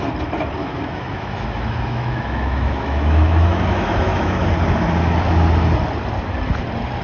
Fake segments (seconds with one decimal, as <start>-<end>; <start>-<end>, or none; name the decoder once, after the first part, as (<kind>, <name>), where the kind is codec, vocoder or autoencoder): 0.6-4.5 (autoencoder, DAC-VAE)